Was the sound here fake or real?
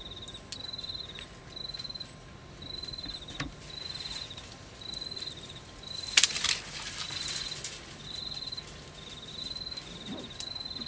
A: real